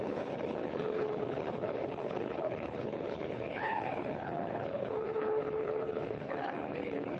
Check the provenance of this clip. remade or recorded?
remade